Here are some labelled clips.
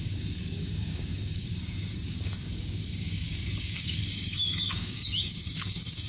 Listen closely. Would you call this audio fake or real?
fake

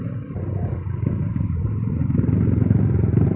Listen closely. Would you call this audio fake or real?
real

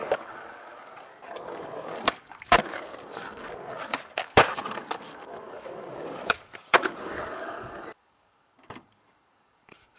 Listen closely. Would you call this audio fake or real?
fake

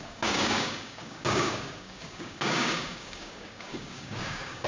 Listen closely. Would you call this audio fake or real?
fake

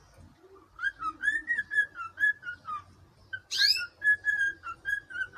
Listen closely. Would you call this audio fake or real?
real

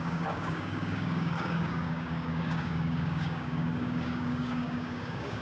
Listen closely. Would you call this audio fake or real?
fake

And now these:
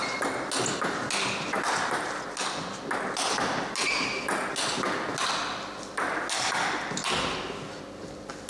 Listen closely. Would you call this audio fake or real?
real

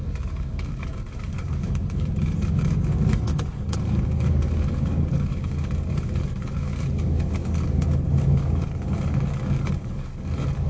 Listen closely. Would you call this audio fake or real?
fake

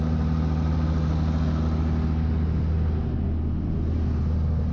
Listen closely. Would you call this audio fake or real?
real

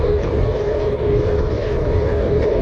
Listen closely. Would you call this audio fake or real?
fake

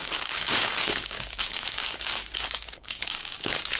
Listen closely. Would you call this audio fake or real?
fake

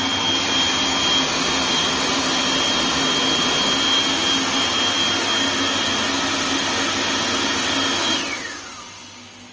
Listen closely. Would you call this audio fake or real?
real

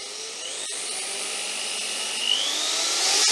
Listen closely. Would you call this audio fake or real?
real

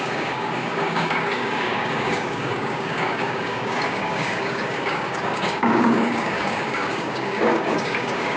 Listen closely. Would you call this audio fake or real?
fake